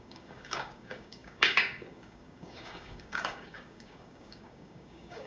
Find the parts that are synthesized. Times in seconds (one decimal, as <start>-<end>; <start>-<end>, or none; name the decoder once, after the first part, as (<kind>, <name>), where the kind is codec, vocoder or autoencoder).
0.0-5.3 (codec, DAC)